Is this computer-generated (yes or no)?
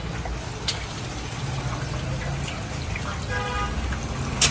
no